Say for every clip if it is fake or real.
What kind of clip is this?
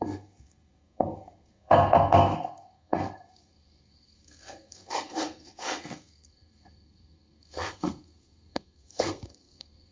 fake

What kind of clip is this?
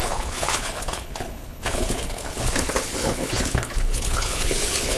fake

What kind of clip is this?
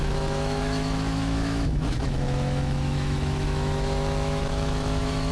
fake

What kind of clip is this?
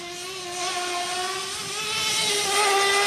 real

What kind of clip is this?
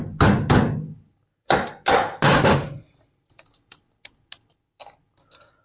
real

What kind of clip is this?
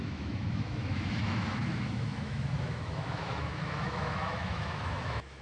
fake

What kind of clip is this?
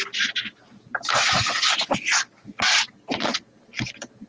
real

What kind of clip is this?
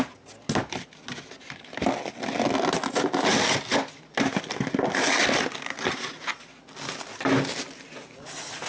real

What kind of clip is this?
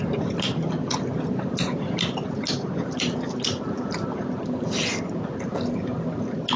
real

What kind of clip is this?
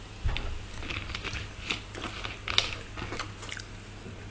real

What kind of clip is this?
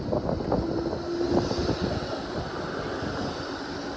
real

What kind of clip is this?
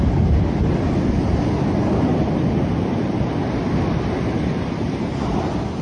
real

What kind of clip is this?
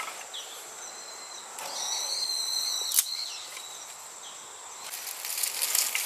real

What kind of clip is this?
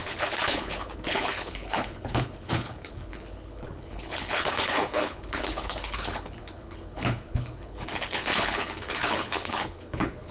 fake